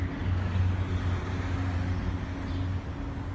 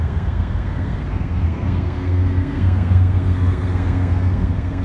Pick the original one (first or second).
first